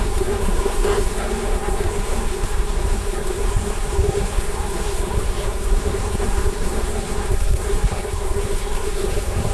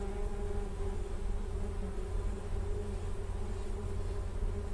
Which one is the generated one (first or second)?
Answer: first